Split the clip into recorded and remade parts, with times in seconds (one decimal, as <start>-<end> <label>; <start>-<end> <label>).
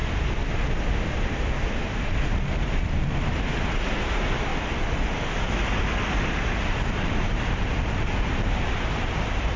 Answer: 0.0-1.7 recorded; 1.7-4.5 remade; 4.5-6.0 recorded; 6.0-9.6 remade